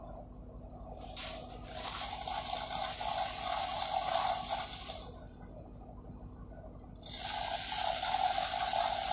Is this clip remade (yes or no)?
no